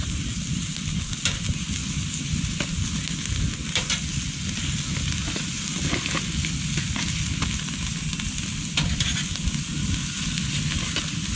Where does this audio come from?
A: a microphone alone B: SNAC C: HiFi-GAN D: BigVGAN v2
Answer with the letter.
A